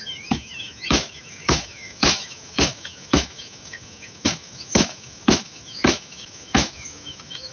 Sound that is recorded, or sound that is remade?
remade